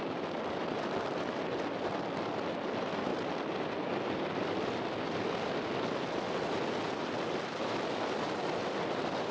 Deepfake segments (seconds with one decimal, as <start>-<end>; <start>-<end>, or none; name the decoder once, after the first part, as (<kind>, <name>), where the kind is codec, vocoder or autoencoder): 0.0-3.1 (vocoder, BigVGAN v2); 7.3-9.3